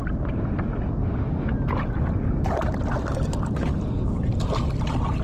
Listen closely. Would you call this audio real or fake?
real